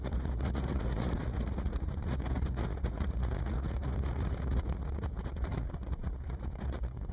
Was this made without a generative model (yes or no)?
no